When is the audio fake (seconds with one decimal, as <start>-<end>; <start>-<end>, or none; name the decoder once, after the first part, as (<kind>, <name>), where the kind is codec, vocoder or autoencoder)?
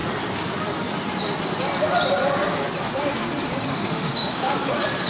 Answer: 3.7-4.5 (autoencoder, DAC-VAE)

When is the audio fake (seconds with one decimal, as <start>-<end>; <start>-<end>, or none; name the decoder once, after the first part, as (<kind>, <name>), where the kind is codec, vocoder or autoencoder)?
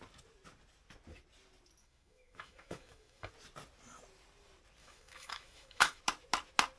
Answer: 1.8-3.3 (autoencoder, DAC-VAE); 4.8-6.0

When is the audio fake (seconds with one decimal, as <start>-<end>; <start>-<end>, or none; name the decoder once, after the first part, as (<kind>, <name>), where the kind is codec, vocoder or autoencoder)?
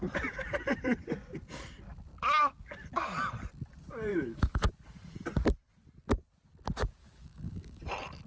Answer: 4.1-4.7 (autoencoder, DAC-VAE); 7.0-7.8